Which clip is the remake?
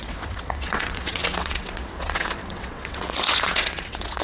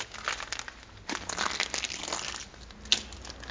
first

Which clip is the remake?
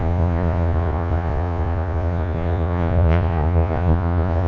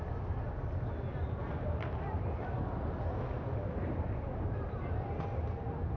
first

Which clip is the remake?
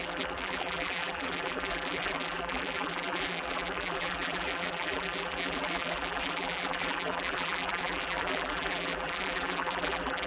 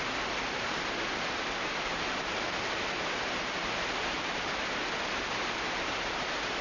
first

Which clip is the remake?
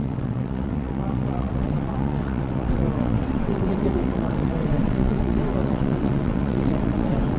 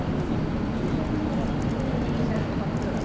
first